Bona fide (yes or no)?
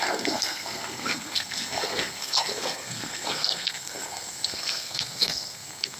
no